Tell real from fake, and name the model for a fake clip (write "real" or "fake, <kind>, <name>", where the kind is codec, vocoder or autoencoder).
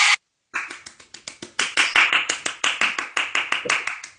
fake, vocoder, BigVGAN v2